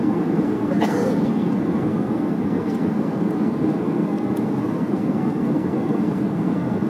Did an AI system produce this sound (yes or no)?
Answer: yes